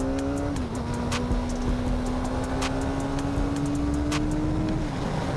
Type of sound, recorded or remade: recorded